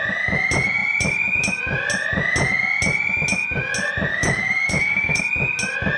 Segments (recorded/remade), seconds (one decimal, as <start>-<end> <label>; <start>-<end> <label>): 0.0-4.1 recorded; 4.1-5.2 remade; 5.2-6.0 recorded

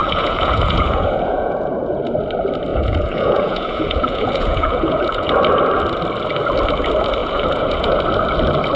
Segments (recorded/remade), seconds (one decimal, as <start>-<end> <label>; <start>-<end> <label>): 0.0-2.0 remade; 2.0-2.7 recorded; 2.7-5.3 remade; 5.3-7.2 recorded; 7.2-8.0 remade; 8.0-8.8 recorded

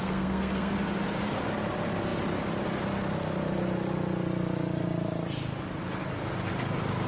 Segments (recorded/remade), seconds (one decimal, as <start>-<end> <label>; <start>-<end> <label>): 0.0-0.7 remade; 0.7-7.1 recorded

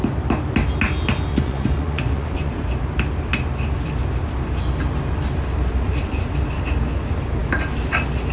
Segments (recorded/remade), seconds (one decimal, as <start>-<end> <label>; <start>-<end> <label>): 0.0-1.3 recorded; 1.3-2.5 remade; 2.5-8.3 recorded

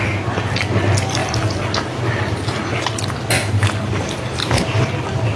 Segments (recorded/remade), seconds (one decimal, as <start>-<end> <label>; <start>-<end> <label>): 0.0-5.4 recorded

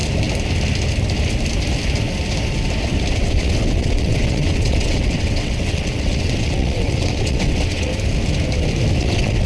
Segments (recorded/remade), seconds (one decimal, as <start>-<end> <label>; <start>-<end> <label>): 0.0-3.1 recorded; 3.1-7.9 remade; 7.9-9.0 recorded; 9.0-9.5 remade

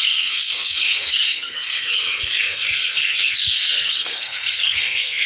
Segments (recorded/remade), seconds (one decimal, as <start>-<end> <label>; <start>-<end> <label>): 0.0-5.3 remade